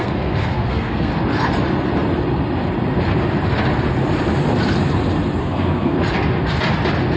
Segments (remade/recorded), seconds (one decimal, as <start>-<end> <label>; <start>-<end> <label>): 0.0-1.1 remade; 1.1-5.4 recorded; 5.4-6.0 remade; 6.0-7.2 recorded